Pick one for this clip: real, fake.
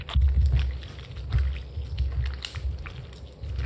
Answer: real